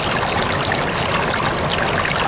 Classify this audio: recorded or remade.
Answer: recorded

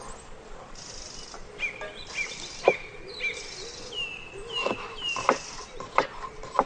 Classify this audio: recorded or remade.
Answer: recorded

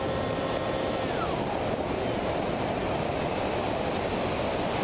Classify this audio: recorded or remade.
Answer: recorded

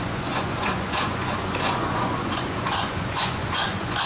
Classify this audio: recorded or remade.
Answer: remade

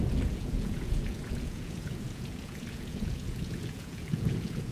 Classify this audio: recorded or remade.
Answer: remade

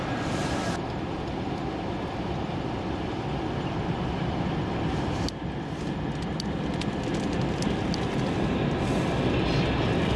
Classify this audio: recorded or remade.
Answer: recorded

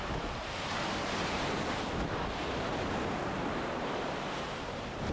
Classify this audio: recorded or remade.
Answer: recorded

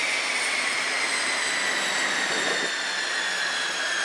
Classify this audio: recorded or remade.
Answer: recorded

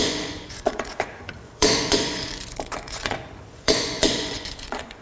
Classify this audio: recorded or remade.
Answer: remade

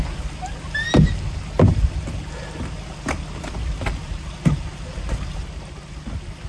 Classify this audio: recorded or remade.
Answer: recorded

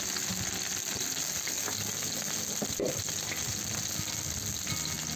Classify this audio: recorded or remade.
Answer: recorded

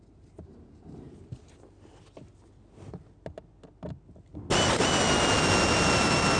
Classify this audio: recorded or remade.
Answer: recorded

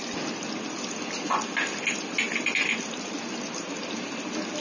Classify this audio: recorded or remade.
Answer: recorded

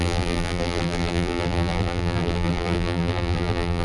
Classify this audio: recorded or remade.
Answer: remade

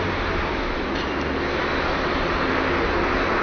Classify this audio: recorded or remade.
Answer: recorded